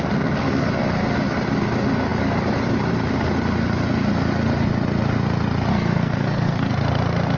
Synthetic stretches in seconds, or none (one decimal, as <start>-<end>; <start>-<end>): 5.7-6.7